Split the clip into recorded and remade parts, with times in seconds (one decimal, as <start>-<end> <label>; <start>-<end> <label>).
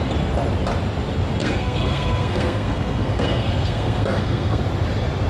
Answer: 0.0-1.4 recorded; 1.4-4.6 remade; 4.6-5.3 recorded